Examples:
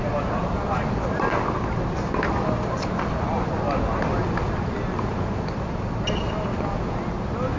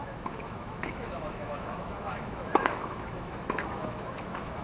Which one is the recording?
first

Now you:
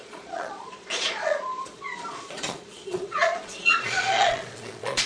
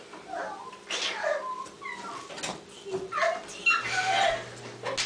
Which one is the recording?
second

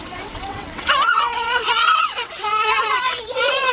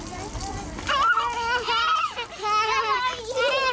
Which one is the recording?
second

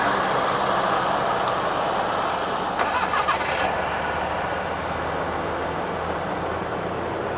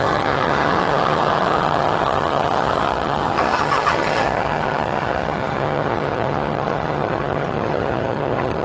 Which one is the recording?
first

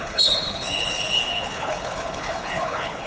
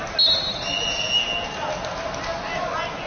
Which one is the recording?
second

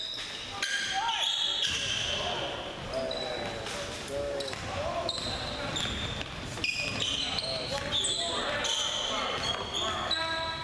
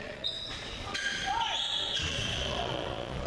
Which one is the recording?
first